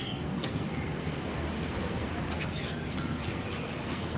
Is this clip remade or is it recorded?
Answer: remade